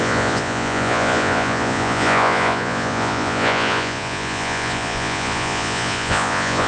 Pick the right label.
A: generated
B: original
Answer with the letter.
A